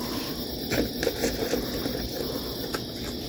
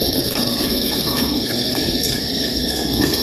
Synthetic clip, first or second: second